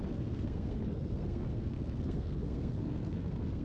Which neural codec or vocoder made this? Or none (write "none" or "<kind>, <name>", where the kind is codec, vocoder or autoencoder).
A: codec, SNAC